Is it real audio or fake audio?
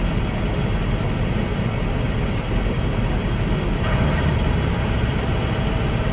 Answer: real